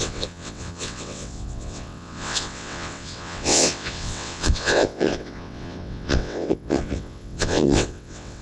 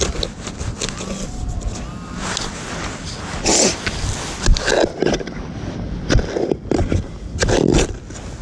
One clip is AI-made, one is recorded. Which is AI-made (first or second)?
first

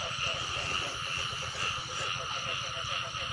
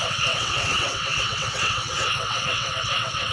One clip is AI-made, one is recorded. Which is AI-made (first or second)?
second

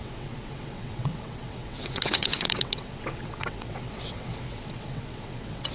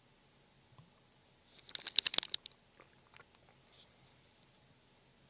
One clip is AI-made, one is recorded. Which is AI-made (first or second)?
first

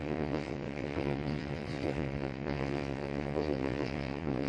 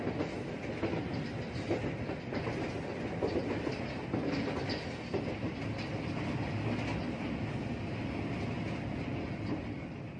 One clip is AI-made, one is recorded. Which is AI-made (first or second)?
first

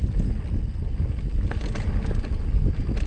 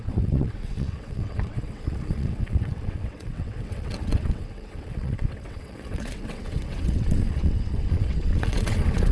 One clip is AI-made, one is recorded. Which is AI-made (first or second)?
second